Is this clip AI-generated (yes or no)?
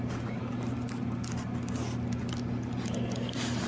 no